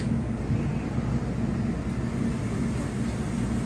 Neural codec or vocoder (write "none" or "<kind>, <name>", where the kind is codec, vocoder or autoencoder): none